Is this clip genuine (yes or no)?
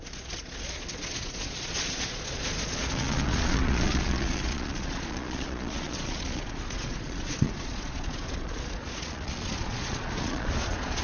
no